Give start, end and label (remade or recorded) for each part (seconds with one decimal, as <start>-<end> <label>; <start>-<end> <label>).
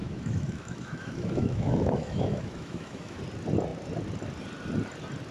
0.0-3.2 remade; 3.2-5.3 recorded